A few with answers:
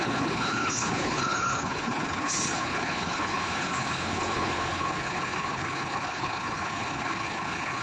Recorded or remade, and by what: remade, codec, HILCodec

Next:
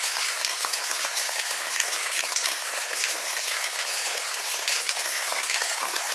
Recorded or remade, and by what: remade, codec, SNAC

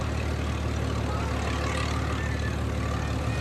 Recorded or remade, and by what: recorded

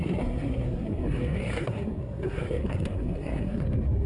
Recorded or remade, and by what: remade, codec, SNAC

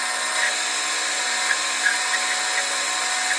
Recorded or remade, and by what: recorded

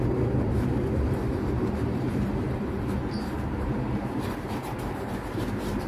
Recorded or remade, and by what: remade, vocoder, BigVGAN v2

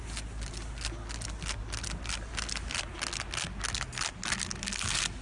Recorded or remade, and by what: recorded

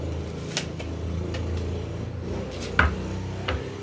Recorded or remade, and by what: recorded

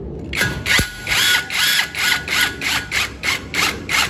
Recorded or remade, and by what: recorded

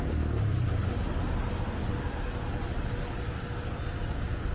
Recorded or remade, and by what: recorded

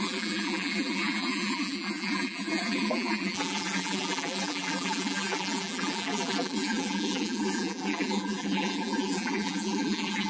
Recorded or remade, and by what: remade, vocoder, BigVGAN v2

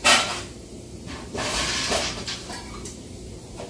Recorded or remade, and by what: remade, vocoder, BigVGAN v2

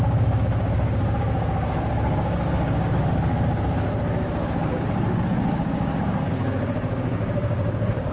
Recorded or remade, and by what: remade, codec, DAC